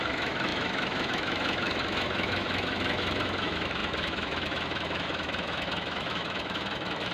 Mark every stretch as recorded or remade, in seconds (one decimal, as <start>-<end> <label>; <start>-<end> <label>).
0.0-7.1 remade